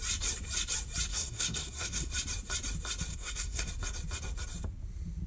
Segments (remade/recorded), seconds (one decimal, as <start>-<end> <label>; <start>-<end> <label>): 0.0-1.1 recorded; 1.1-2.1 remade; 2.1-3.1 recorded; 3.1-3.7 remade; 3.7-5.3 recorded